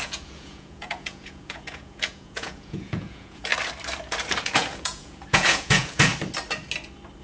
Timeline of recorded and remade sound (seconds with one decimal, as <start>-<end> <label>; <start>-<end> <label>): 0.0-3.5 remade; 3.5-4.4 recorded; 4.4-6.1 remade; 6.1-7.2 recorded

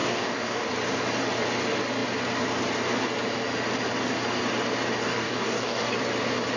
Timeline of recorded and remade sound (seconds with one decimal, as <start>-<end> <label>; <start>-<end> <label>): 0.0-0.7 remade; 0.7-5.0 recorded; 5.0-5.9 remade; 5.9-6.6 recorded